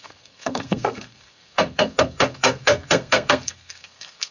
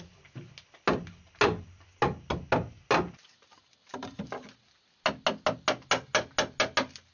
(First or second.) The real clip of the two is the second